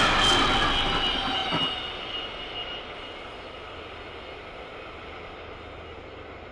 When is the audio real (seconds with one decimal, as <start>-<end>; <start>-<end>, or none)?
0.0-6.5